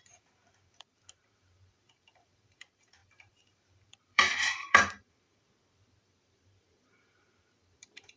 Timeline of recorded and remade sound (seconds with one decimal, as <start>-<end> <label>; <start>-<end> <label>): 0.0-8.2 remade